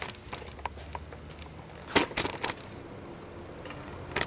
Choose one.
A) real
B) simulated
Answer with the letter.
A